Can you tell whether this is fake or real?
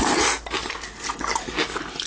real